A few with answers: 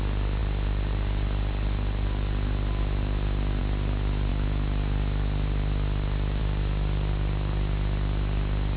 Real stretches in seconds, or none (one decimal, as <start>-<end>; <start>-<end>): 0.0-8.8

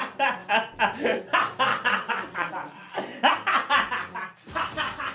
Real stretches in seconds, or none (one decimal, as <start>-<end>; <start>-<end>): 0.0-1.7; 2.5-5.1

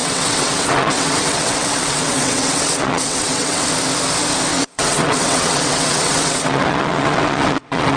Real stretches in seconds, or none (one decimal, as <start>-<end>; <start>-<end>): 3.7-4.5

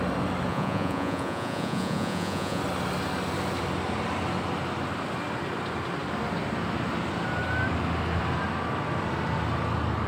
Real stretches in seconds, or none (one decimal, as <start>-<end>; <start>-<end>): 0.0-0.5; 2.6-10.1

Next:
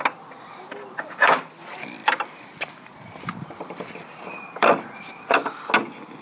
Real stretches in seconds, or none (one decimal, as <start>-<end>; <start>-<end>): 0.0-2.0; 5.7-6.2